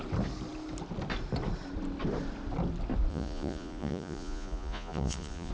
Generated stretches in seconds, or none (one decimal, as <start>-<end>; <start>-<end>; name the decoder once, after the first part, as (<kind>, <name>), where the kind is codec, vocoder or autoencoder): 3.1-5.5 (vocoder, Vocos)